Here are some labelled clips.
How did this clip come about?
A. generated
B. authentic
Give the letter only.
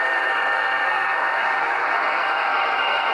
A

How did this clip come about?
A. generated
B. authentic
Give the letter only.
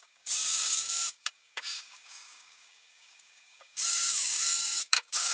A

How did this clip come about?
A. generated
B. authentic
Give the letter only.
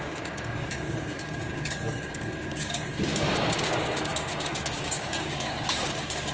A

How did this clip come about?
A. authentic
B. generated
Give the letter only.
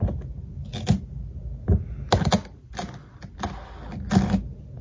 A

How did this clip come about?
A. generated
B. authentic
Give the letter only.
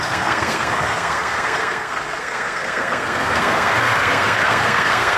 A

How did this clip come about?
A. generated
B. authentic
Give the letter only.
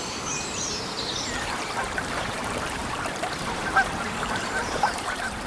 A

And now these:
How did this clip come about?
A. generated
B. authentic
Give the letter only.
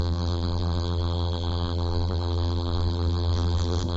A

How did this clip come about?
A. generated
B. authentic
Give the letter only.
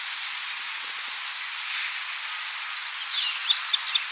B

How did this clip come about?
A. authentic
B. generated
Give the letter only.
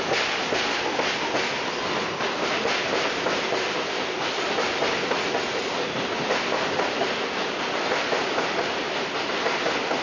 A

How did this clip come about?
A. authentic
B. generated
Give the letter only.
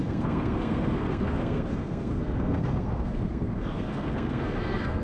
B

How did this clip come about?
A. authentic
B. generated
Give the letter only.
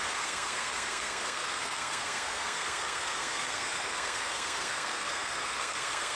B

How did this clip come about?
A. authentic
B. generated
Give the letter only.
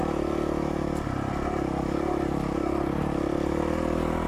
A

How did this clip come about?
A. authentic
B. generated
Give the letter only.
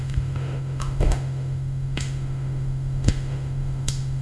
B